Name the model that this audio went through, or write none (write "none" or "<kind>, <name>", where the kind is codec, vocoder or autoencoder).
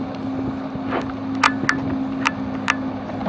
none